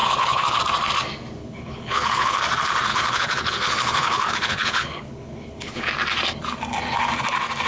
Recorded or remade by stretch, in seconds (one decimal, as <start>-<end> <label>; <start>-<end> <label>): 0.0-0.6 remade; 0.6-1.4 recorded; 1.4-2.4 remade; 2.4-2.9 recorded; 2.9-5.9 remade; 5.9-7.7 recorded